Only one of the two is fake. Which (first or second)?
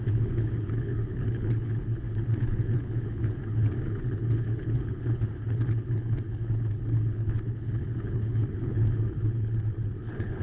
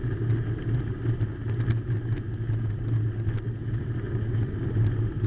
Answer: first